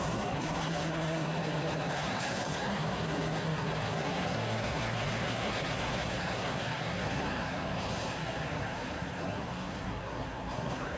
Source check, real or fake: fake